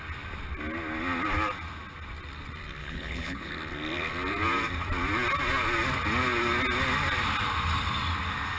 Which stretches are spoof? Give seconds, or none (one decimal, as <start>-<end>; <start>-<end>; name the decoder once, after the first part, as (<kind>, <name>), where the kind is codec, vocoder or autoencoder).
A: 2.8-3.5 (codec, HILCodec)